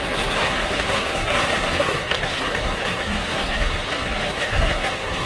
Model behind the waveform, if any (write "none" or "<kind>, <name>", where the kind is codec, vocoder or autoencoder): codec, SNAC